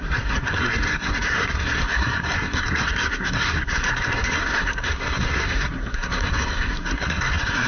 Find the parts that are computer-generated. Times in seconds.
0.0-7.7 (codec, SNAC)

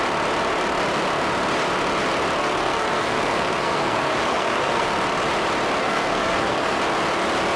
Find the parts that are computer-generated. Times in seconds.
2.4-4.9 (codec, SNAC); 5.8-6.8